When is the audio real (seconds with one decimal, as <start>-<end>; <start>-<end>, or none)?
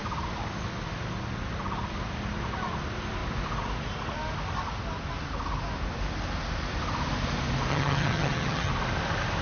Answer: 0.0-7.7; 8.7-9.4